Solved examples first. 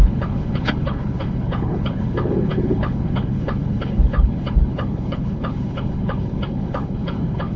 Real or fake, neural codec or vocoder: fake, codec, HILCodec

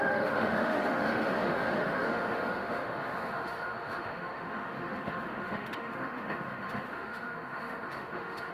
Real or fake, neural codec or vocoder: fake, autoencoder, DAC-VAE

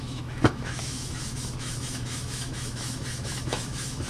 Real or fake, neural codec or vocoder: fake, autoencoder, DAC-VAE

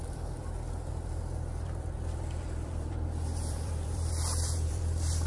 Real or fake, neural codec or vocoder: fake, vocoder, BigVGAN v2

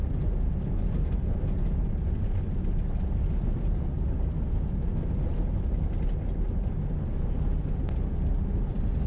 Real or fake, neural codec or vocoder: real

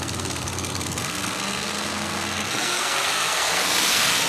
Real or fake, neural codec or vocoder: fake, codec, SNAC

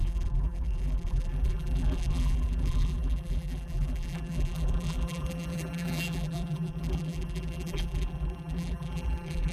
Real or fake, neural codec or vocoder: fake, vocoder, BigVGAN v2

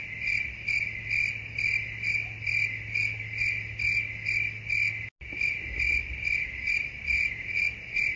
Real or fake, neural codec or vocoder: real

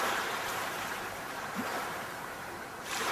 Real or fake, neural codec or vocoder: fake, vocoder, BigVGAN v2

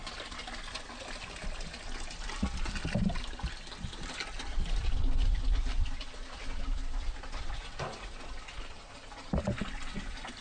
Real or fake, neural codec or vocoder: real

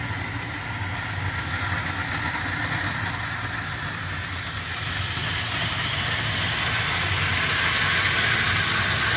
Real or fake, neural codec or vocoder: real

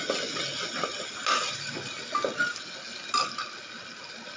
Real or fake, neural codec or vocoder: real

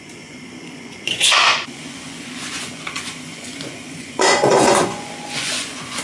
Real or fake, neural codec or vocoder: fake, vocoder, Vocos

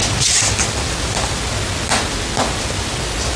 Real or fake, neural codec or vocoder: real